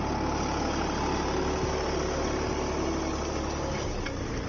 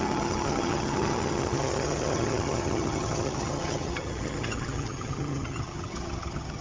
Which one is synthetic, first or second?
second